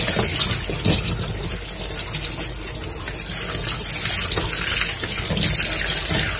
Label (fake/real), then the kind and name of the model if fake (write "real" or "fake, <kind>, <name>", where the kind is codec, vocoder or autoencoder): real